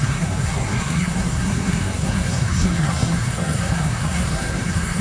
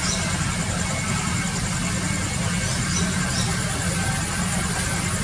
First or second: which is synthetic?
first